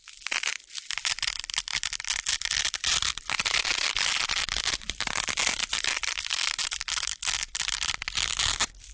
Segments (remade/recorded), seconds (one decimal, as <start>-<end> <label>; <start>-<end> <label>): 0.0-5.4 recorded; 5.4-7.2 remade; 7.2-8.9 recorded